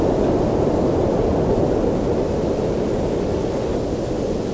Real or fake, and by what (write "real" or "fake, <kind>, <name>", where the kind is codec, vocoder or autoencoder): real